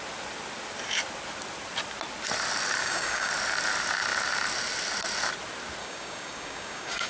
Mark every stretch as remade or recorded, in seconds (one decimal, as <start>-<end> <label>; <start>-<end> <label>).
0.0-2.8 recorded; 2.8-3.3 remade; 3.3-5.8 recorded; 5.8-7.1 remade